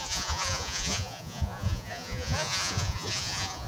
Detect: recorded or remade remade